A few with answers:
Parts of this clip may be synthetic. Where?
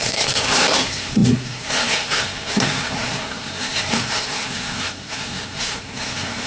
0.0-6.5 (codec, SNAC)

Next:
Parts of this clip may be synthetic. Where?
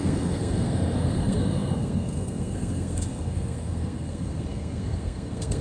0.0-5.6 (codec, SNAC)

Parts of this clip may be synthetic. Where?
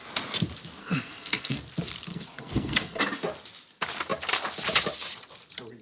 0.8-1.6 (codec, SNAC); 2.1-3.0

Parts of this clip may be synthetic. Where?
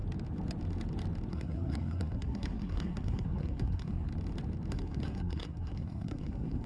1.3-4.1 (codec, SNAC); 4.7-6.7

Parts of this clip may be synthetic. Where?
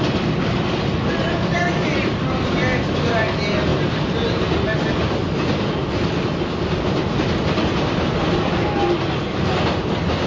none